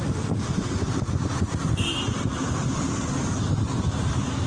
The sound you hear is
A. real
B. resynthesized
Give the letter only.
B